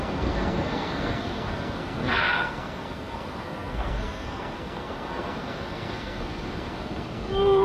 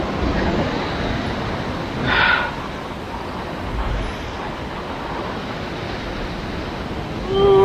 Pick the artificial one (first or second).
first